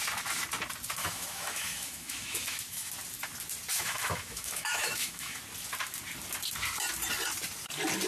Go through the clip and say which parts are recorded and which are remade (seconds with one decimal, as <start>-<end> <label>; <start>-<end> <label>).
0.0-1.0 recorded; 1.0-2.9 remade; 2.9-3.7 recorded; 3.7-5.4 remade; 5.4-8.1 recorded

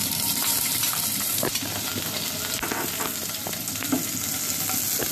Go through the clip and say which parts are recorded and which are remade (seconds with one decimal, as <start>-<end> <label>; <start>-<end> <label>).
0.0-1.9 remade; 1.9-5.1 recorded

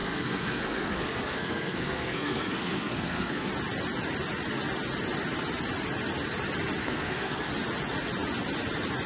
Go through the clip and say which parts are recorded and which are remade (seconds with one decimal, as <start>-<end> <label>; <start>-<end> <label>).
0.0-3.5 remade; 3.5-6.8 recorded; 6.8-7.5 remade; 7.5-9.1 recorded

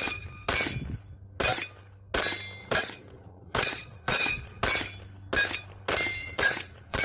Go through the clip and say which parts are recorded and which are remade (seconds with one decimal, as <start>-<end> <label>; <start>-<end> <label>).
0.0-2.6 recorded; 2.6-4.6 remade; 4.6-6.2 recorded; 6.2-7.0 remade

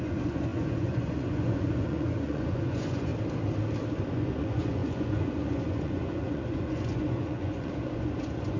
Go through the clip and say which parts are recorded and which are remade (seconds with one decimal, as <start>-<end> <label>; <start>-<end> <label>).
0.0-3.1 remade; 3.1-4.1 recorded; 4.1-8.6 remade